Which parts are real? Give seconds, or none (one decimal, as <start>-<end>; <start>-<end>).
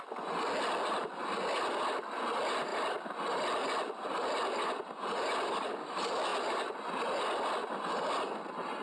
0.0-8.8